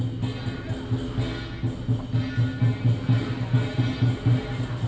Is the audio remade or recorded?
recorded